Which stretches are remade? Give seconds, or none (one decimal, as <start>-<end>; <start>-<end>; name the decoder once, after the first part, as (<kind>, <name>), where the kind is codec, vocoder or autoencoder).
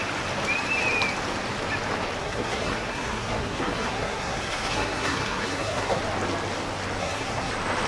2.2-6.0 (codec, SNAC); 7.0-7.5